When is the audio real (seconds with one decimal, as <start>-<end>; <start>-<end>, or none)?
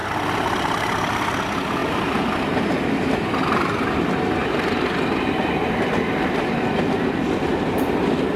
0.0-4.4; 6.8-7.5